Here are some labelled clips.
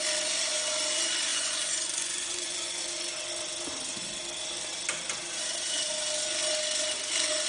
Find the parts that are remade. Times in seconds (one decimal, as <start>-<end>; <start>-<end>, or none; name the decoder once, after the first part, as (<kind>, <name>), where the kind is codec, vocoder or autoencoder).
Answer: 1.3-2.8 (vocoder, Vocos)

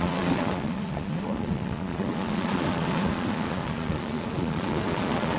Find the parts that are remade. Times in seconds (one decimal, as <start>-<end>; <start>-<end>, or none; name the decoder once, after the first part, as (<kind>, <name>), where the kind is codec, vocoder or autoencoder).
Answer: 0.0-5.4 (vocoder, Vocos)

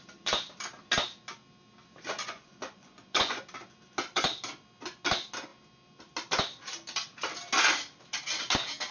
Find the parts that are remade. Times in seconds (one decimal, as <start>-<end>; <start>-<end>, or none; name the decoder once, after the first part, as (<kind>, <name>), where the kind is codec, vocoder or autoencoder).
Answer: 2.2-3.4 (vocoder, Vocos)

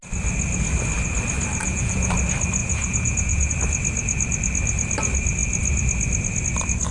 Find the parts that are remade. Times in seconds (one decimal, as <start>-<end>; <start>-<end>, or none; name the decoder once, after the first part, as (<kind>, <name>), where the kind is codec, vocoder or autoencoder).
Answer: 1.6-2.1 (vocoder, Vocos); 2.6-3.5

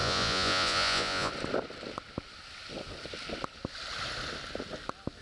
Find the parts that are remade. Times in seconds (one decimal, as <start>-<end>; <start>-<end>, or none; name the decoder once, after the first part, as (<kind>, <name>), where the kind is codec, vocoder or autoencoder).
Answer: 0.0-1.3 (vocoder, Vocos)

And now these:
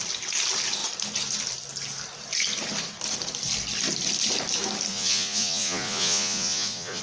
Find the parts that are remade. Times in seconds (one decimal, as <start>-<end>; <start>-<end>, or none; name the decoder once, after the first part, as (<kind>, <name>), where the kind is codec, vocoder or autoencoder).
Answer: 4.9-7.0 (vocoder, Vocos)